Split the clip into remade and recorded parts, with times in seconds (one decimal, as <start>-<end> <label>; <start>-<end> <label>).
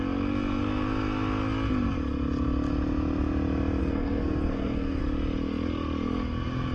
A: 0.0-3.8 recorded; 3.8-5.0 remade; 5.0-6.7 recorded